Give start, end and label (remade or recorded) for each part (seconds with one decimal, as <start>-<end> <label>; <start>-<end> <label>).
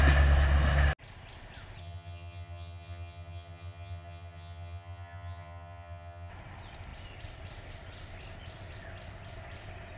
0.0-1.8 recorded; 1.8-6.3 remade; 6.3-10.0 recorded